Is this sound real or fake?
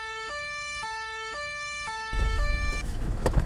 fake